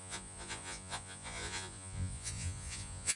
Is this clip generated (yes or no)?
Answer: yes